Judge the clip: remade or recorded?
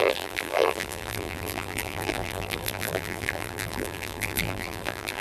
remade